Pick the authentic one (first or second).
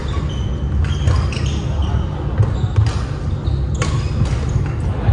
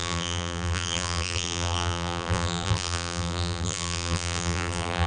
first